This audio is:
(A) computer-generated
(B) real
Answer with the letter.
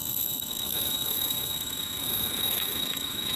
A